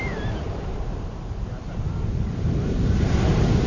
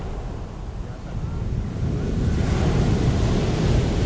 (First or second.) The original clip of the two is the second